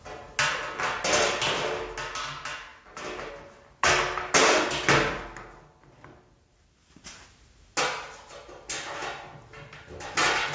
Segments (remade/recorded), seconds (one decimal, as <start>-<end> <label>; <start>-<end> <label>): 0.0-10.5 recorded